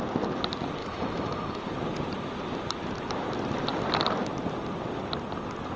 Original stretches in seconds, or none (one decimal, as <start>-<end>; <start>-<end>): 0.0-0.8; 1.6-5.8